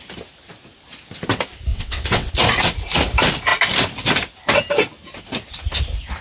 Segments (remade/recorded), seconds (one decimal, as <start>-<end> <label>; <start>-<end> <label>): 0.0-1.7 recorded; 1.7-2.3 remade; 2.3-6.2 recorded